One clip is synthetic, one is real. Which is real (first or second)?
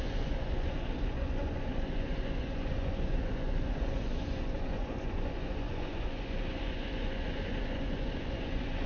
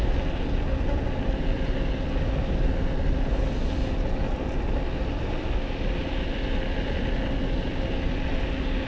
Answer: second